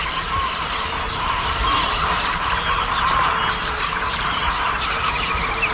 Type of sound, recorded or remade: remade